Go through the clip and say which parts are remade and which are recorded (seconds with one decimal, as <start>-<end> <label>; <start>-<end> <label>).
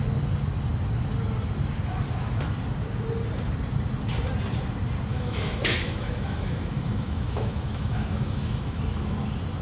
0.0-5.1 recorded; 5.1-8.8 remade; 8.8-9.6 recorded